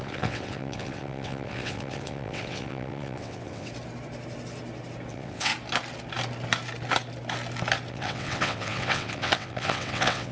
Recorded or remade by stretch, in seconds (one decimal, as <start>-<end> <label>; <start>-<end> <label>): 0.0-3.7 remade; 3.7-5.1 recorded; 5.1-5.5 remade; 5.5-7.9 recorded; 7.9-10.3 remade